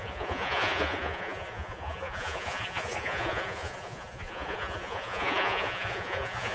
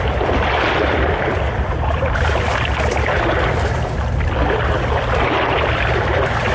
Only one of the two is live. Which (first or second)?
second